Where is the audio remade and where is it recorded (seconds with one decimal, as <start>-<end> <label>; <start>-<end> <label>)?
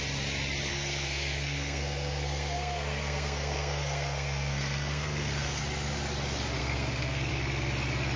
0.0-0.7 recorded; 0.7-5.6 remade; 5.6-6.6 recorded; 6.6-7.3 remade; 7.3-8.2 recorded